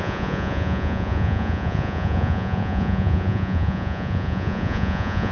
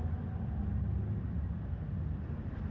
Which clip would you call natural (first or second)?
second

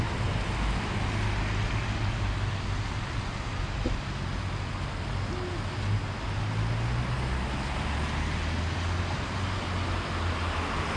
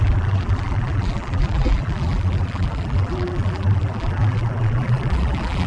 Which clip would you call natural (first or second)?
first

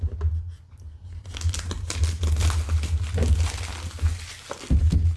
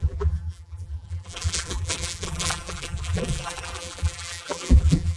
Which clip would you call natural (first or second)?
first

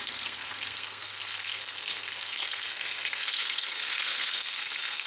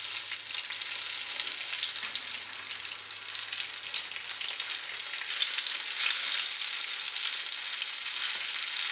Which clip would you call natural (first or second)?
second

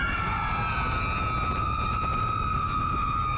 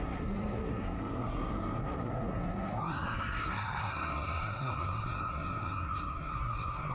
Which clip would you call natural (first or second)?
first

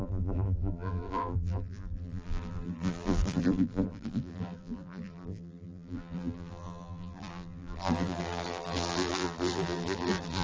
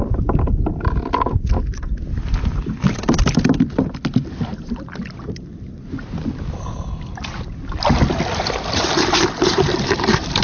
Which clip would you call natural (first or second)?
second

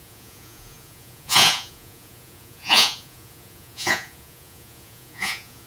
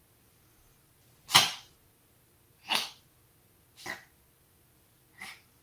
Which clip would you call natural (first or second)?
second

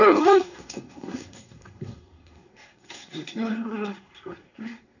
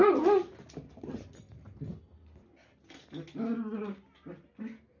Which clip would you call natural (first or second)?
second